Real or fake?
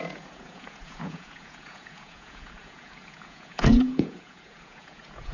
fake